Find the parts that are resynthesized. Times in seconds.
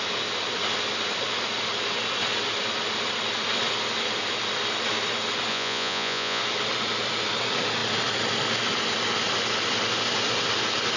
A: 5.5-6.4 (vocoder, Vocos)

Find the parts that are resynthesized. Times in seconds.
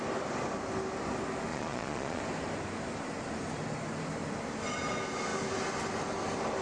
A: 1.5-2.2 (vocoder, Vocos)